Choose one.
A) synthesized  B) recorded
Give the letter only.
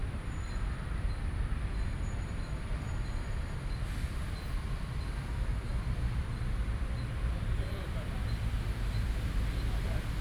A